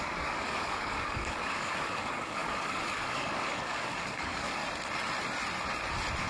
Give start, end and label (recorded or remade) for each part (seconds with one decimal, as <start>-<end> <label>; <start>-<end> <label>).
0.0-4.6 remade; 4.6-6.3 recorded